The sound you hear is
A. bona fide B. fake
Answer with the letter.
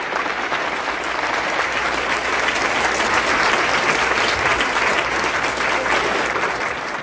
A